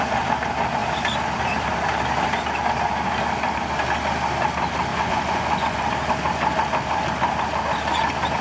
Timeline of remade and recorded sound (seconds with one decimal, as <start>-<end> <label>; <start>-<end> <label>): 0.0-4.9 recorded; 4.9-5.9 remade; 5.9-8.4 recorded